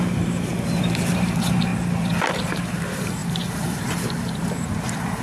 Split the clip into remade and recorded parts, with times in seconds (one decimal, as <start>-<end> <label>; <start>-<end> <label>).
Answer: 0.0-0.5 remade; 0.5-1.1 recorded; 1.1-1.7 remade; 1.7-2.3 recorded; 2.3-5.2 remade